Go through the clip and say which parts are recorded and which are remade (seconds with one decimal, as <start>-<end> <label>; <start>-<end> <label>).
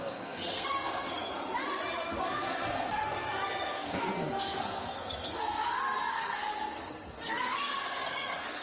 0.0-1.3 remade; 1.3-2.2 recorded; 2.2-8.6 remade